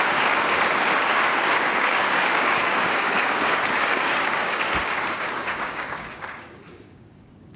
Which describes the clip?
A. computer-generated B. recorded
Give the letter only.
A